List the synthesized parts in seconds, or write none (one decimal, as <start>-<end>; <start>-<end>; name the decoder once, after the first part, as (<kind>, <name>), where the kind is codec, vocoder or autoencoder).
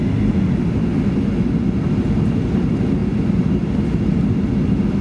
none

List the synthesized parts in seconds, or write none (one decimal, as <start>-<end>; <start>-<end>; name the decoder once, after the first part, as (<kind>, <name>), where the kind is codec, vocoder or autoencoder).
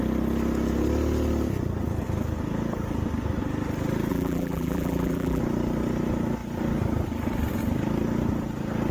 4.1-5.4 (vocoder, BigVGAN v2)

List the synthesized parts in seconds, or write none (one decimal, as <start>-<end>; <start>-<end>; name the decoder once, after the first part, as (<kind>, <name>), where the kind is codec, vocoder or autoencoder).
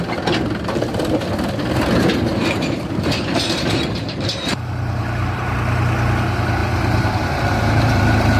2.3-5.5 (vocoder, BigVGAN v2); 6.6-8.0